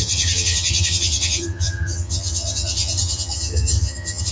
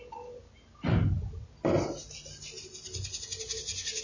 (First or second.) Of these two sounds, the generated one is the first